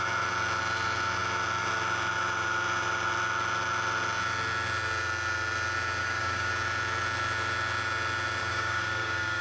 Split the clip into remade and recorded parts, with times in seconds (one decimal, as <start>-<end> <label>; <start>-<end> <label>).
0.0-6.0 recorded; 6.0-6.5 remade; 6.5-8.4 recorded; 8.4-9.4 remade